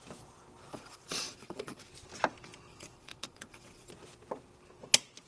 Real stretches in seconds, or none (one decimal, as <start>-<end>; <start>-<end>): 0.0-0.7; 1.9-2.7; 3.9-5.3